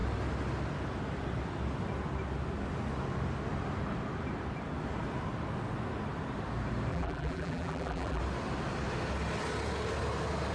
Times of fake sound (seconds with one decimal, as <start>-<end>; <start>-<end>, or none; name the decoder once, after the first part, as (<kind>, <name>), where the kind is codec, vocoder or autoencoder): 6.9-8.2 (vocoder, BigVGAN v2)